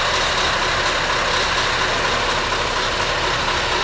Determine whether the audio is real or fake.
real